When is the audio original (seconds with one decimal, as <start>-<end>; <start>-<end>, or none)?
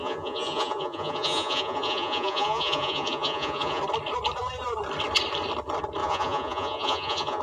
3.8-6.0